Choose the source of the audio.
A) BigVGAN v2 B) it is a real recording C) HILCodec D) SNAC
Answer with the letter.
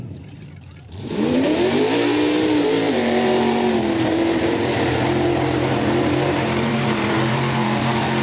A